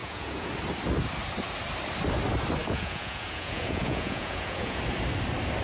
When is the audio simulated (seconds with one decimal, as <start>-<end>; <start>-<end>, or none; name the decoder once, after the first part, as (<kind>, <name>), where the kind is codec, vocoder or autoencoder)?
0.0-0.5 (vocoder, Vocos); 2.6-4.8